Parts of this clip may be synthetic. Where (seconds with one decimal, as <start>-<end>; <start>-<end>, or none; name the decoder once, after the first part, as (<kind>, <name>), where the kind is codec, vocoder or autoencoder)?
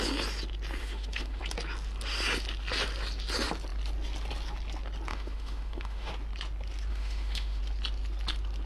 0.8-1.4 (autoencoder, DAC-VAE); 5.1-6.1; 6.9-7.6